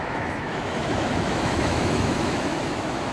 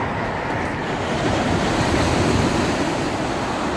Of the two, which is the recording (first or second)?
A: second